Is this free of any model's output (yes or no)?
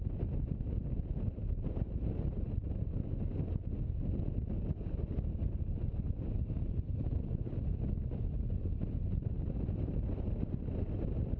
yes